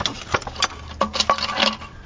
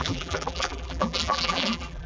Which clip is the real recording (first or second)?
first